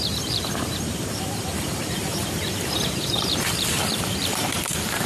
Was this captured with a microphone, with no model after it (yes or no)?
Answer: no